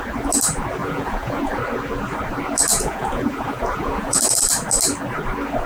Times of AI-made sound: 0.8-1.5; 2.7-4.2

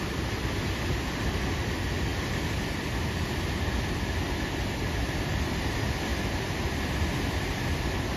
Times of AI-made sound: none

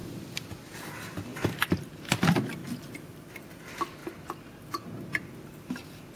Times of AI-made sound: none

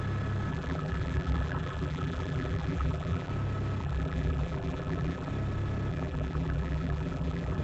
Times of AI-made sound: 0.5-3.3; 3.8-5.3; 5.9-7.6

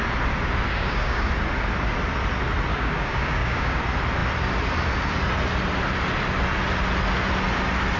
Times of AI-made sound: 0.7-1.3; 2.7-3.8

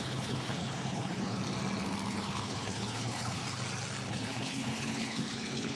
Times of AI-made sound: 0.0-1.4; 2.1-3.4; 4.1-5.7